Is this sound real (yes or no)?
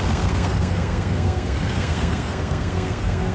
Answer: no